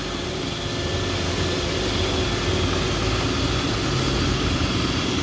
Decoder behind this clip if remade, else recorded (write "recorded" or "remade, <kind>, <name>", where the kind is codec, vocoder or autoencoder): recorded